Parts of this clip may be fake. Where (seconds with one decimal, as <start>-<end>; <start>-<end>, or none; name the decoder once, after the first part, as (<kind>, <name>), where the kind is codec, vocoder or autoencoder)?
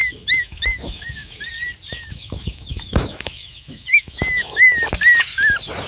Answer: 0.0-1.4 (autoencoder, DAC-VAE); 1.9-4.8